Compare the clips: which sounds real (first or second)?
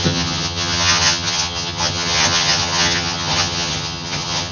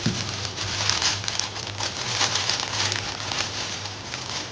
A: second